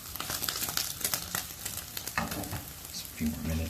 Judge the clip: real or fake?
real